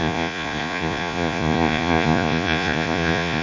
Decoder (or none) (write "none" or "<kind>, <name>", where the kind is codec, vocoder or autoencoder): vocoder, Vocos